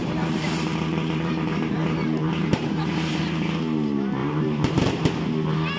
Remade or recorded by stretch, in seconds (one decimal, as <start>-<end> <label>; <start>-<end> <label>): 0.0-3.2 remade; 3.2-4.2 recorded; 4.2-4.9 remade; 4.9-5.8 recorded